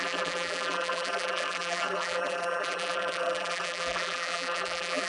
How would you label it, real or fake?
fake